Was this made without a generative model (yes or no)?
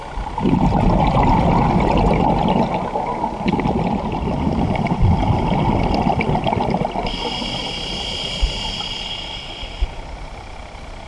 yes